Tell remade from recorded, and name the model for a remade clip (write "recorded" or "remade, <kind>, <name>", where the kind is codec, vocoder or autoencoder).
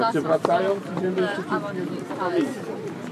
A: remade, vocoder, BigVGAN v2